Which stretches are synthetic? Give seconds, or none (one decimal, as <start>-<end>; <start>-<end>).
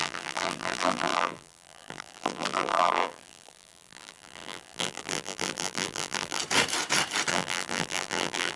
0.0-6.4; 7.3-8.6